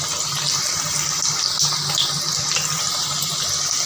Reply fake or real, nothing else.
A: real